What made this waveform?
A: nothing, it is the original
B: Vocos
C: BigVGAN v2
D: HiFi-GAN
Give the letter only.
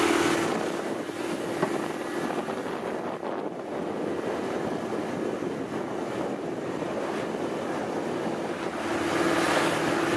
A